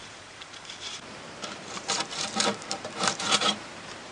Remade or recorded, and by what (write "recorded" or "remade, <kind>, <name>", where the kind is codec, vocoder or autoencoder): remade, vocoder, BigVGAN v2